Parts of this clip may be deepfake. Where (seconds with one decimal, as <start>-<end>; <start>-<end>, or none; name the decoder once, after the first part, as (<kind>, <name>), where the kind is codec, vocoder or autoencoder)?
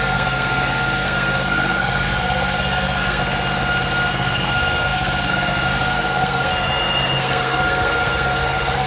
0.0-3.2 (codec, SNAC); 4.1-8.9